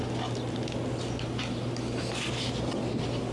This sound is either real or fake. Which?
real